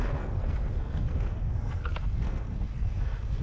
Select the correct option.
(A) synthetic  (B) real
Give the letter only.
A